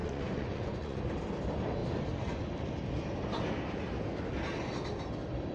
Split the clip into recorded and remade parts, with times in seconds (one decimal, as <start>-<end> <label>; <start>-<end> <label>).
0.0-1.0 remade; 1.0-5.5 recorded